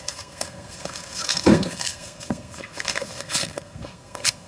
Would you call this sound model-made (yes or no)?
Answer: yes